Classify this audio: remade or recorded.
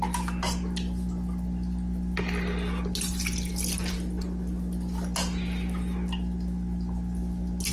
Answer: recorded